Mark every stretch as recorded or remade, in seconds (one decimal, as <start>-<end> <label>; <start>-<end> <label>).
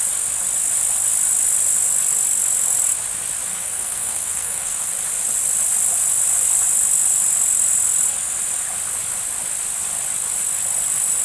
0.0-3.5 recorded; 3.5-4.9 remade; 4.9-11.2 recorded